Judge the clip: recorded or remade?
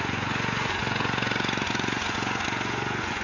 remade